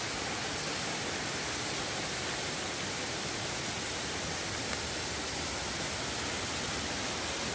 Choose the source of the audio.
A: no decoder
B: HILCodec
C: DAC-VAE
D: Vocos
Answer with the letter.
A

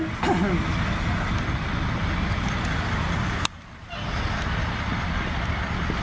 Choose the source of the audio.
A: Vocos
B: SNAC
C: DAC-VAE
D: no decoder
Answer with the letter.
D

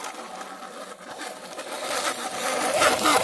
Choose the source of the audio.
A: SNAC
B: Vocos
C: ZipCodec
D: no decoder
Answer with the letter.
D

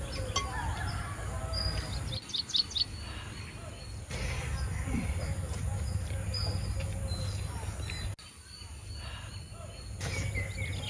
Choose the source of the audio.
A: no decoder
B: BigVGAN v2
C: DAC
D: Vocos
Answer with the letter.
A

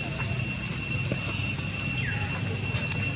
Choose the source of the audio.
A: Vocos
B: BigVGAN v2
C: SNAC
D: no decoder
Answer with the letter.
D